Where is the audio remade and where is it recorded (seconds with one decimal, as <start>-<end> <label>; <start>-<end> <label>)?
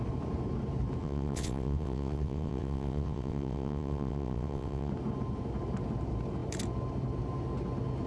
0.0-1.0 recorded; 1.0-4.9 remade; 4.9-8.1 recorded